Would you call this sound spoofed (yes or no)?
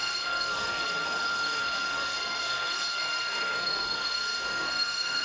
yes